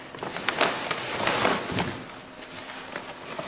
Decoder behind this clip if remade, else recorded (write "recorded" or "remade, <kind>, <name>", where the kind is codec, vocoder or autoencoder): recorded